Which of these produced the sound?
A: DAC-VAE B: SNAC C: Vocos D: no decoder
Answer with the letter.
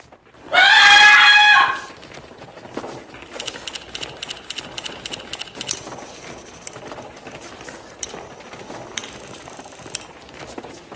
D